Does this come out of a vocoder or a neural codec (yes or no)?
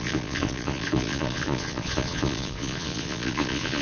yes